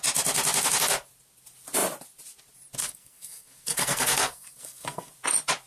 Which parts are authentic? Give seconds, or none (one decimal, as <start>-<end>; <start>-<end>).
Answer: 0.0-2.8; 5.1-5.7